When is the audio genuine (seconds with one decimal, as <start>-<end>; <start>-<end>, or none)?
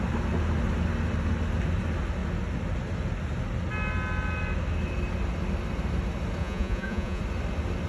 0.0-6.4; 7.2-7.9